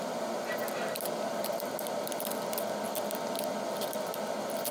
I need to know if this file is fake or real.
real